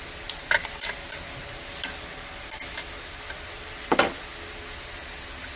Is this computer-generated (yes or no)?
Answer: no